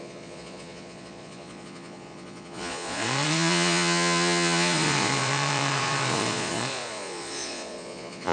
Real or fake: fake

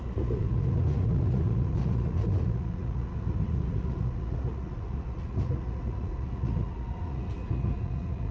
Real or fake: fake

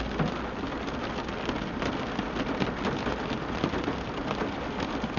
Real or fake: real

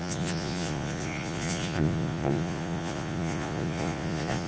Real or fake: fake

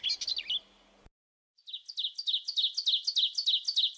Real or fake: real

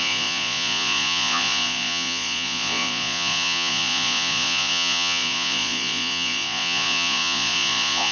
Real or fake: fake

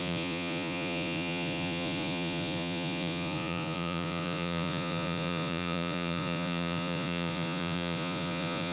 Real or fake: fake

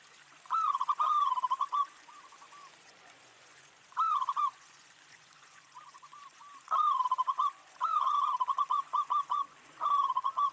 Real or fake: fake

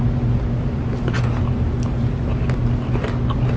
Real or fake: real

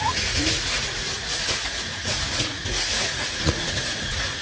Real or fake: fake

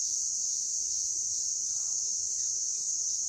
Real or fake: real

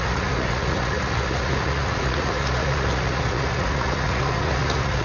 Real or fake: fake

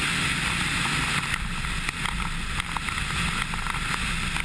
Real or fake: real